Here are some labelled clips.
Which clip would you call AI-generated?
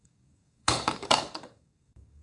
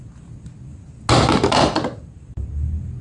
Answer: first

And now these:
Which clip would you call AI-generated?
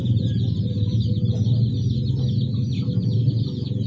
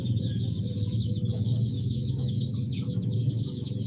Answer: second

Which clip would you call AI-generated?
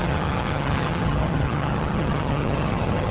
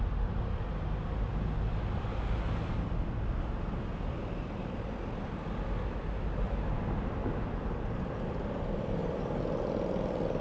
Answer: first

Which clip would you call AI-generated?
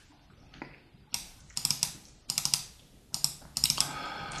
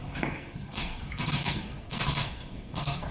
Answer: second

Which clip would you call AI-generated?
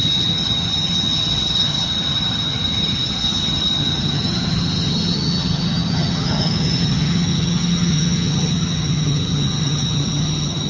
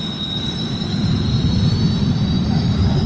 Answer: first